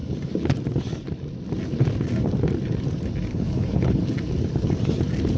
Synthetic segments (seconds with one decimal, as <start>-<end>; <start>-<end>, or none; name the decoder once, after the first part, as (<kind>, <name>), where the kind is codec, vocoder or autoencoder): 3.3-4.0 (codec, HILCodec)